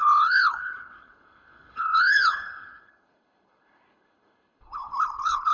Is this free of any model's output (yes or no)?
no